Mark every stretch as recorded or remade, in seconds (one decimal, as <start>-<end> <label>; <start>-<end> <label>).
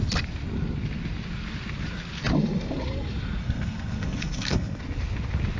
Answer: 0.0-3.4 recorded; 3.4-4.8 remade; 4.8-5.6 recorded